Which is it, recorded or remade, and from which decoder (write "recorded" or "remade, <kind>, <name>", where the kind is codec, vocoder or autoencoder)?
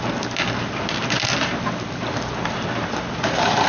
recorded